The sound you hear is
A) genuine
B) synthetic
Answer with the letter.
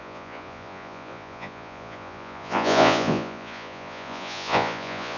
B